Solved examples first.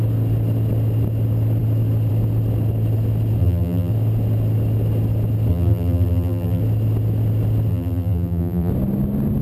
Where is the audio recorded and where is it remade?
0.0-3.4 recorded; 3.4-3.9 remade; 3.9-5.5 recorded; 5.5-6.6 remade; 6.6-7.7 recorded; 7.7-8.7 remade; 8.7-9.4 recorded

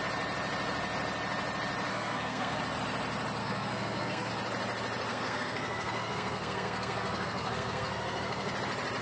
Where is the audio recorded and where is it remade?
0.0-1.9 recorded; 1.9-2.6 remade; 2.6-3.4 recorded; 3.4-4.3 remade; 4.3-5.1 recorded; 5.1-8.5 remade; 8.5-9.0 recorded

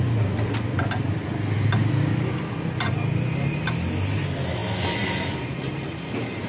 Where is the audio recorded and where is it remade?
0.0-6.5 recorded

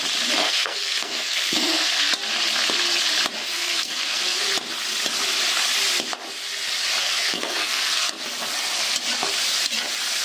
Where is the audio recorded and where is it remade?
0.0-0.4 recorded; 0.4-2.1 remade; 2.1-3.4 recorded; 3.4-4.4 remade; 4.4-7.0 recorded; 7.0-8.2 remade; 8.2-10.2 recorded

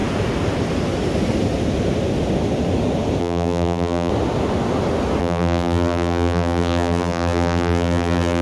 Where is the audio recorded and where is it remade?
0.0-3.2 recorded; 3.2-4.1 remade; 4.1-5.2 recorded; 5.2-8.4 remade

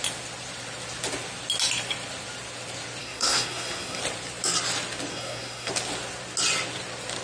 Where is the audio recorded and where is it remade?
0.0-3.0 recorded; 3.0-4.0 remade; 4.0-5.1 recorded; 5.1-5.7 remade; 5.7-7.2 recorded